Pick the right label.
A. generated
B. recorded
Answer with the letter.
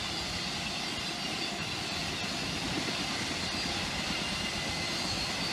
B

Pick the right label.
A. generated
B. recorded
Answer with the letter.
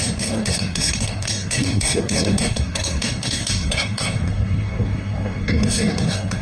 A